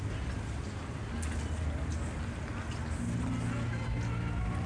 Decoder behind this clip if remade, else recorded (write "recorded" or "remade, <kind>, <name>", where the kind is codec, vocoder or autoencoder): recorded